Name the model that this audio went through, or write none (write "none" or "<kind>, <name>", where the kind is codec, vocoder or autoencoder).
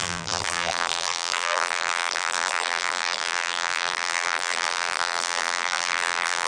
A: vocoder, BigVGAN v2